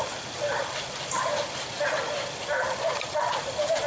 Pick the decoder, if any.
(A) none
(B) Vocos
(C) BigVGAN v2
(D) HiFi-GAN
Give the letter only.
A